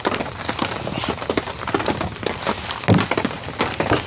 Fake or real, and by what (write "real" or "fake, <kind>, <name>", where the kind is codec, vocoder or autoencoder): real